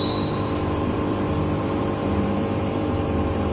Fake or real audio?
fake